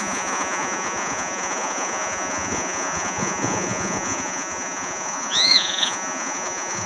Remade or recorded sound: remade